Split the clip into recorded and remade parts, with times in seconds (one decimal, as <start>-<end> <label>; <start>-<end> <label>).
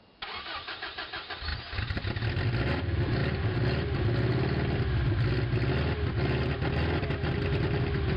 0.0-8.2 recorded